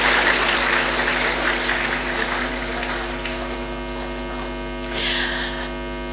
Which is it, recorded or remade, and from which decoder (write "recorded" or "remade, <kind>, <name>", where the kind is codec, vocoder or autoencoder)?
recorded